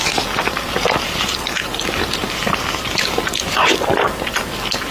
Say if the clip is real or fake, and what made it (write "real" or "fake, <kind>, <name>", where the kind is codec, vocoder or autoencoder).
real